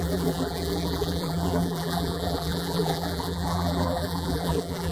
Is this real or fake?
fake